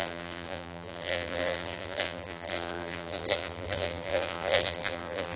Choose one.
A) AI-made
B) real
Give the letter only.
A